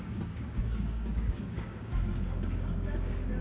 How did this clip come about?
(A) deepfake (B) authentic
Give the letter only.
A